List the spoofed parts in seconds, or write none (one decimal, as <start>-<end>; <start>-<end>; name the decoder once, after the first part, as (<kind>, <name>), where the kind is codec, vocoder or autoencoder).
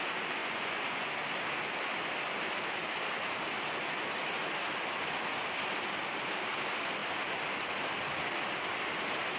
0.4-1.1 (vocoder, Vocos)